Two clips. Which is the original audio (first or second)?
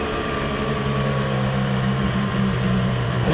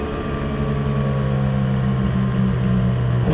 second